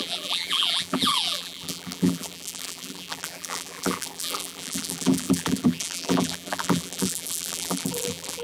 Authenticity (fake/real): fake